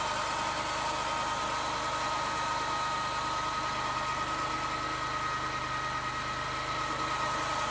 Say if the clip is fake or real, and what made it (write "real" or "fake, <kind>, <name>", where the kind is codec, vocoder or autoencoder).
real